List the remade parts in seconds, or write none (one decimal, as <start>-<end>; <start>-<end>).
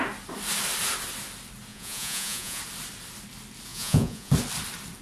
1.7-2.6; 3.7-4.3